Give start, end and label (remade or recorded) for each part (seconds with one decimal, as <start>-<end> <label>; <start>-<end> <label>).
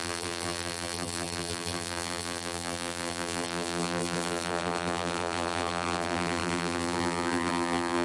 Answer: 0.0-8.0 remade